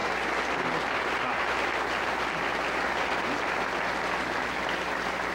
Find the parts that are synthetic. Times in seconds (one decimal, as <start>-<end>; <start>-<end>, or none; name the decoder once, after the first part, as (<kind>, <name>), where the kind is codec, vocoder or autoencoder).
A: none